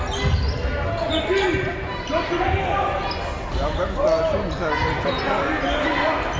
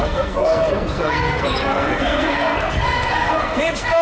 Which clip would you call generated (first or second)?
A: second